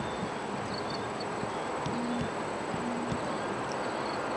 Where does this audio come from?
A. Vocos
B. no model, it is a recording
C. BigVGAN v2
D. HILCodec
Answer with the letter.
B